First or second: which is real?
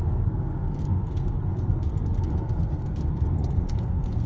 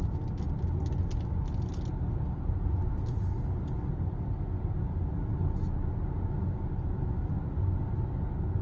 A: second